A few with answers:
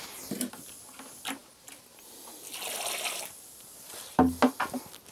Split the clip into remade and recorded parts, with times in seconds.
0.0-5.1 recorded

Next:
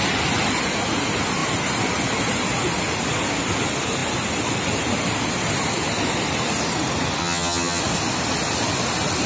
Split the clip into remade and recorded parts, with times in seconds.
0.0-7.2 recorded; 7.2-7.8 remade; 7.8-9.3 recorded

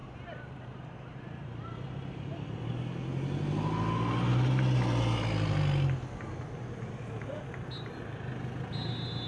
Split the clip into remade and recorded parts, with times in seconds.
0.0-2.6 remade; 2.6-9.3 recorded

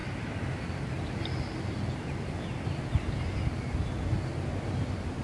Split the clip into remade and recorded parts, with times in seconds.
0.0-5.2 recorded

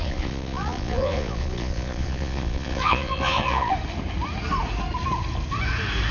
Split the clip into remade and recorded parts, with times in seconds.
0.0-3.7 remade; 3.7-6.1 recorded

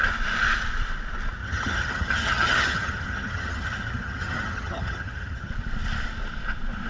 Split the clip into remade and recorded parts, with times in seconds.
0.0-1.4 recorded; 1.4-5.5 remade; 5.5-6.9 recorded